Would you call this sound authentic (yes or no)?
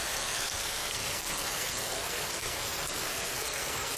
no